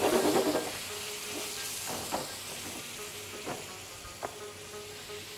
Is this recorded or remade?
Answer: recorded